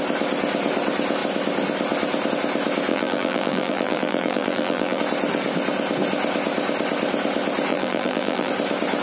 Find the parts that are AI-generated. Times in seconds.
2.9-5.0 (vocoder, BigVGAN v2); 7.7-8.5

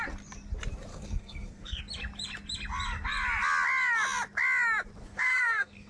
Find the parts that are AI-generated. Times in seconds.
0.9-1.8 (codec, SNAC); 5.0-5.9

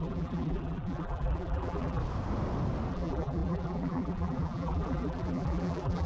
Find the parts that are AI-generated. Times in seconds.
0.0-2.0 (vocoder, BigVGAN v2); 2.9-6.1

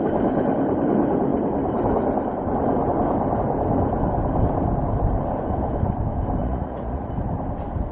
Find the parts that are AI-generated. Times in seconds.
6.4-7.1 (vocoder, Vocos)

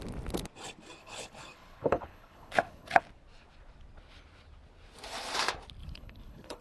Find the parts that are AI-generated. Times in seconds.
1.0-3.0 (codec, HILCodec); 5.8-6.6

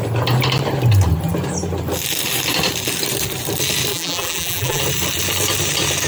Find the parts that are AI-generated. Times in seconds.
3.9-4.8 (vocoder, BigVGAN v2)

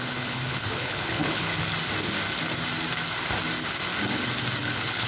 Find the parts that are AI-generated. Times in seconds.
0.0-1.5 (codec, HILCodec); 4.6-5.1